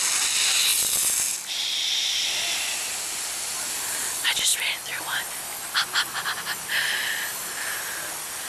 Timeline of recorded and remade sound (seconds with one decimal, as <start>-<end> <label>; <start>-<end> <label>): 0.0-8.5 recorded